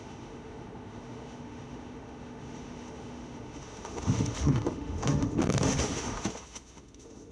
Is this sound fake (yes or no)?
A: yes